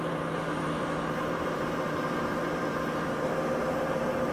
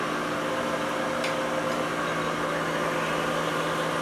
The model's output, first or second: first